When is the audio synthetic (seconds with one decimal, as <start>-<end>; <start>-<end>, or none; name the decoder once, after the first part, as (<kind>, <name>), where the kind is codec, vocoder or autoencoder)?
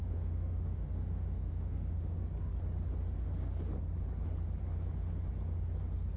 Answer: 0.0-2.2 (autoencoder, DAC-VAE)